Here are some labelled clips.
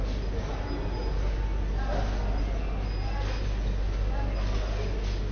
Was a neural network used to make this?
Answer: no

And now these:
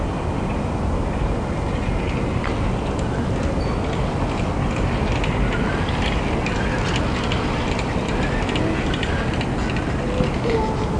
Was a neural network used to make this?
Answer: no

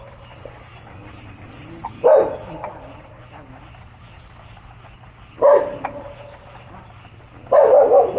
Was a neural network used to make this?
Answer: no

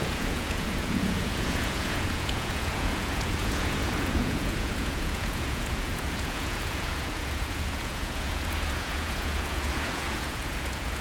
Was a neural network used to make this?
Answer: yes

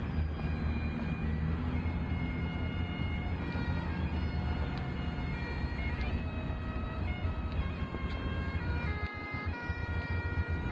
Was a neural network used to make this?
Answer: no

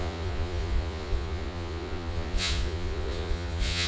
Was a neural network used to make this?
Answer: yes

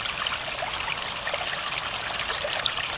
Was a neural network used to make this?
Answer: no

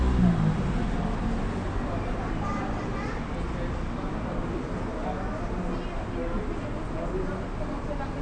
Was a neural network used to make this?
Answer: no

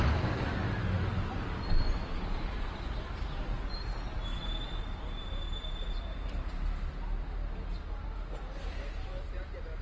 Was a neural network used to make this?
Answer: no